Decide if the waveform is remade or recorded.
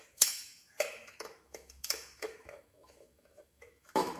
remade